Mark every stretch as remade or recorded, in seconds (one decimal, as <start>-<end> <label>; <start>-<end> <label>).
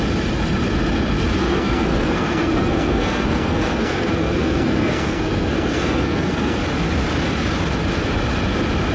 0.0-1.4 recorded; 1.4-6.6 remade; 6.6-8.9 recorded